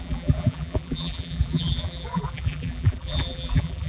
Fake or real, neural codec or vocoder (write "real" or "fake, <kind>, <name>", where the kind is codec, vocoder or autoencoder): fake, vocoder, BigVGAN v2